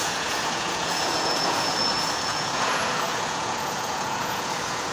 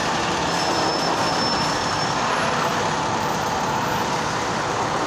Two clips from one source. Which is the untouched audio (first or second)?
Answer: second